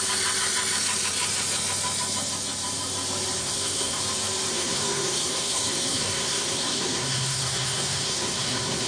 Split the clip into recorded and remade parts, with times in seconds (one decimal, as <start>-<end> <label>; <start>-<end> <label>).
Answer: 0.0-3.4 recorded; 3.4-4.0 remade; 4.0-4.5 recorded; 4.5-8.9 remade